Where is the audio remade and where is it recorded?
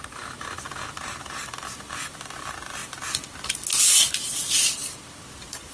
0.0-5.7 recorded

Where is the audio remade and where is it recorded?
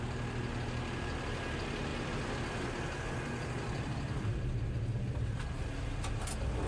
0.0-6.7 recorded